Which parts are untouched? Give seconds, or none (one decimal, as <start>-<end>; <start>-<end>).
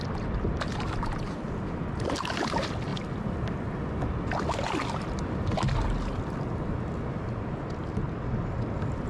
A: 0.0-9.1